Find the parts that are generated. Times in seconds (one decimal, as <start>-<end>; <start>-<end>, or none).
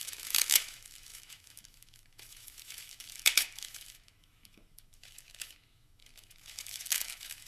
0.0-7.5